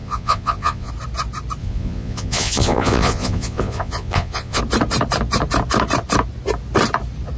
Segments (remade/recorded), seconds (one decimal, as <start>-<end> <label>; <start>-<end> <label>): 0.0-0.9 remade; 0.9-1.6 recorded; 1.6-4.6 remade; 4.6-7.4 recorded